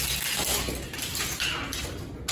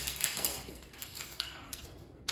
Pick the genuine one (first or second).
first